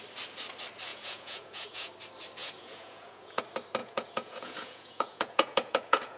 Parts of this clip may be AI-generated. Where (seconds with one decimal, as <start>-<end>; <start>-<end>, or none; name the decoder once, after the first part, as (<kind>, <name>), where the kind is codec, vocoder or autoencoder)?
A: 0.9-1.9 (vocoder, Vocos); 2.4-3.4; 3.8-6.2